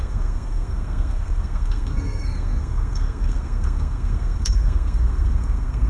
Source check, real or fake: fake